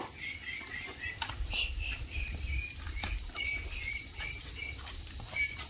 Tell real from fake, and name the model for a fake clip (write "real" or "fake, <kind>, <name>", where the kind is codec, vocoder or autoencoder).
real